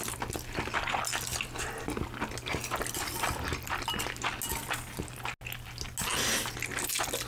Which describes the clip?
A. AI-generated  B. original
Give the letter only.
B